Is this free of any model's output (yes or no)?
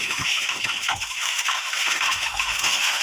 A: no